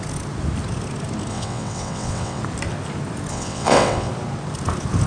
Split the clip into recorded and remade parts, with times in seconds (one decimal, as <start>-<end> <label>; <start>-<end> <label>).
0.0-1.3 recorded; 1.3-2.4 remade; 2.4-3.3 recorded; 3.3-4.1 remade; 4.1-5.1 recorded